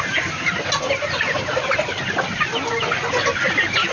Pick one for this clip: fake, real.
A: real